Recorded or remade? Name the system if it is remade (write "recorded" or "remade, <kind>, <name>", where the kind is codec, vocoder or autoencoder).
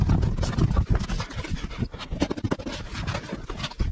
recorded